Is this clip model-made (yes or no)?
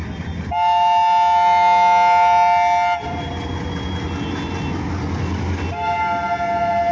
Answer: no